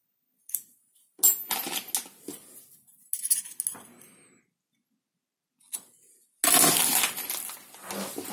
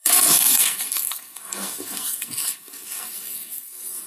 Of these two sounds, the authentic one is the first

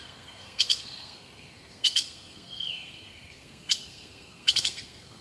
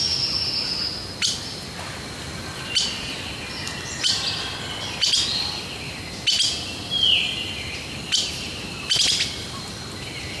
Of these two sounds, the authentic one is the second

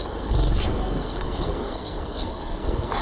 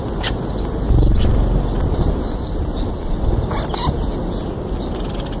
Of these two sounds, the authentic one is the second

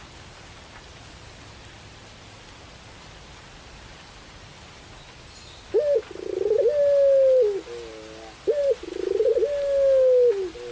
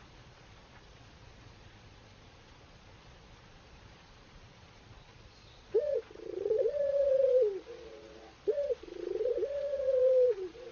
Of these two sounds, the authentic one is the first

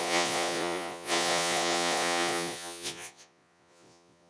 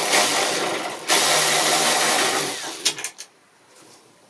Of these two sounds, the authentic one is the second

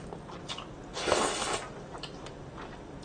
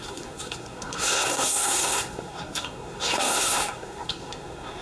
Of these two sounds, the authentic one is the first